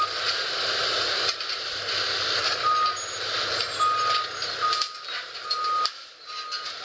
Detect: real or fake real